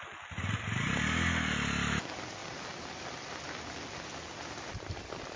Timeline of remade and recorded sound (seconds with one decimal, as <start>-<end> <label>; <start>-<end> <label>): 0.0-5.4 recorded